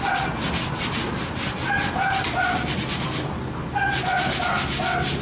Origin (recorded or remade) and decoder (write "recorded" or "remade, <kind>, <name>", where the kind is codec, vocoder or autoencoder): recorded